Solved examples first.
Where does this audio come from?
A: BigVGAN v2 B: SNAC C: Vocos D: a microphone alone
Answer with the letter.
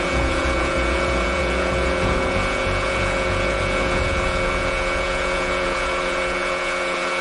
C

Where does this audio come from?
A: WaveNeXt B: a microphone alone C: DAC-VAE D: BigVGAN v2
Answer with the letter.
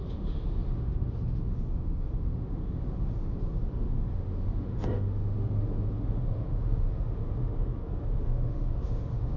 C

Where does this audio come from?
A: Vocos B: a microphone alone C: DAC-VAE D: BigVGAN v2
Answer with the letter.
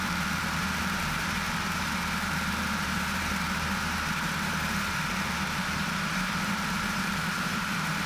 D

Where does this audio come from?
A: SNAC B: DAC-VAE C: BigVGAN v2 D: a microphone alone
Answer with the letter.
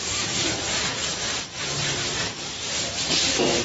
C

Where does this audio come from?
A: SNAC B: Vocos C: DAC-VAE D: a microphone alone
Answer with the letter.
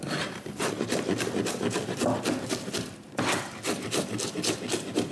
D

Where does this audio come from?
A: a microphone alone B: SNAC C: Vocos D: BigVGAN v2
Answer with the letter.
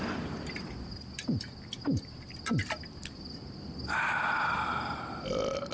A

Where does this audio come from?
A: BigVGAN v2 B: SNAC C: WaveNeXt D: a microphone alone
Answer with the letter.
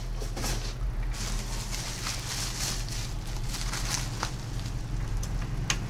D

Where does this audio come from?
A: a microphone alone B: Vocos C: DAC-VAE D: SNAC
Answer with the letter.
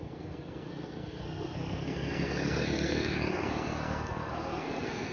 D